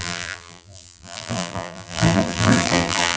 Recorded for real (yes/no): no